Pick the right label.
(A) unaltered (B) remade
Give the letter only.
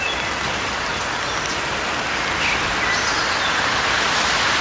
A